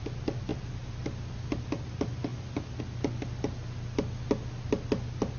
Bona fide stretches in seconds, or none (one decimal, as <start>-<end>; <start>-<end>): 0.0-5.4